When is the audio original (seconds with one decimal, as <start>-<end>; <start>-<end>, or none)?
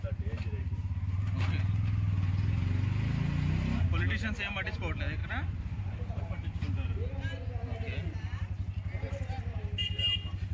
0.0-0.6; 1.2-5.2; 6.2-10.5